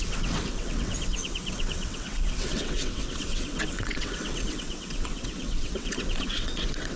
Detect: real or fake fake